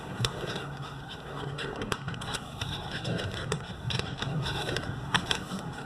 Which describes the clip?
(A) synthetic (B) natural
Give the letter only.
A